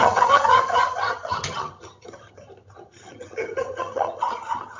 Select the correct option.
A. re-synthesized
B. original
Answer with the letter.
A